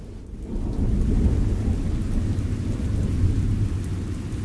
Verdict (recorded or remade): recorded